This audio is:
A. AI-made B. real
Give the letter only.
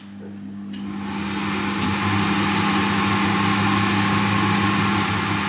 B